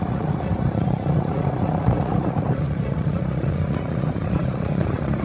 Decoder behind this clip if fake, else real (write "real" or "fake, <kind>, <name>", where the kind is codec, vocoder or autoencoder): fake, vocoder, Vocos